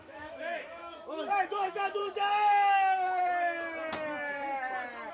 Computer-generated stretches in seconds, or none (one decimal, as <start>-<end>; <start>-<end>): 0.0-2.0